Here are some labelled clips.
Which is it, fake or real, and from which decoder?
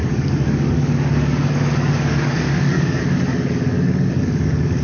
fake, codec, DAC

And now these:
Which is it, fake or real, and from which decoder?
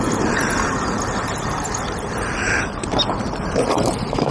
fake, vocoder, BigVGAN v2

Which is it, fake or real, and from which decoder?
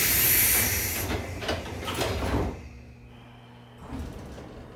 real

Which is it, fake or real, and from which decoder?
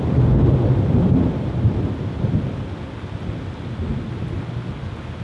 real